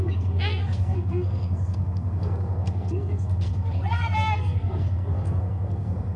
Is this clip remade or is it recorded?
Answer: remade